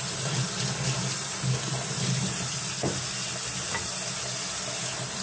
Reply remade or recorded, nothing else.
recorded